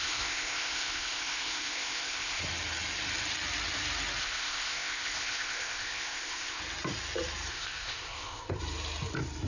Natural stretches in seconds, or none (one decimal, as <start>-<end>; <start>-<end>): 2.4-4.2; 6.6-7.5; 8.6-9.5